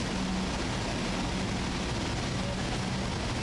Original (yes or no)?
yes